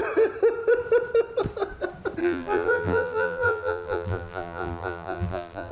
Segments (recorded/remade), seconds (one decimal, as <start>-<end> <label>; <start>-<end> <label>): 0.0-2.2 recorded; 2.2-5.7 remade